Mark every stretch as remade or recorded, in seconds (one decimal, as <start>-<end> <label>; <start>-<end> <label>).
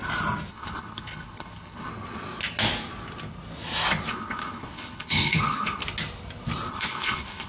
0.0-0.5 recorded; 0.5-1.9 remade; 1.9-4.1 recorded; 4.1-5.8 remade; 5.8-6.7 recorded; 6.7-7.5 remade